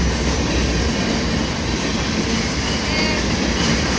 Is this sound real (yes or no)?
yes